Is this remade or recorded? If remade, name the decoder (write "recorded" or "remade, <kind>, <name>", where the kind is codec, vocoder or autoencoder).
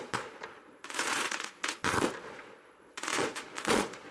remade, vocoder, Vocos